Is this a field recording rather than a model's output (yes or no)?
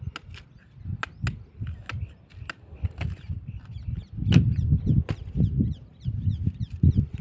yes